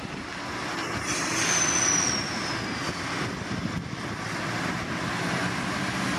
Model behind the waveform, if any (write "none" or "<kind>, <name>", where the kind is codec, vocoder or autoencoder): none